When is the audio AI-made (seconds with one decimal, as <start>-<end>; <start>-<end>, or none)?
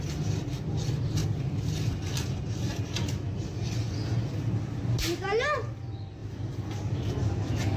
none